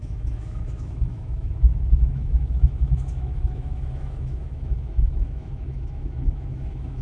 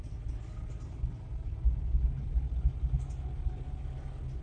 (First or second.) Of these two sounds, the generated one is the first